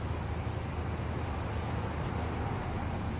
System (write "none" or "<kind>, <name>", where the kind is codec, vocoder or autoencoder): none